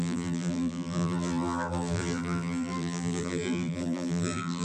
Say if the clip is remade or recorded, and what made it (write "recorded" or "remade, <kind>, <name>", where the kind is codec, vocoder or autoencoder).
remade, vocoder, BigVGAN v2